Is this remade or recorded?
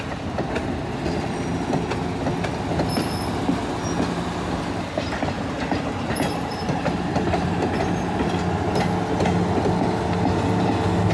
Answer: recorded